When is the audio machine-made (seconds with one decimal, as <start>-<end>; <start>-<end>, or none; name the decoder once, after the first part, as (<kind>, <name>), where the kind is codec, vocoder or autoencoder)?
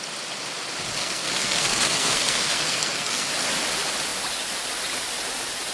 1.0-3.3 (codec, SNAC)